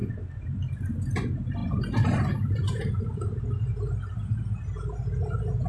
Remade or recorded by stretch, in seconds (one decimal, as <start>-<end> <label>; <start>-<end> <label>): 0.0-0.6 remade; 0.6-1.6 recorded; 1.6-3.4 remade; 3.4-5.7 recorded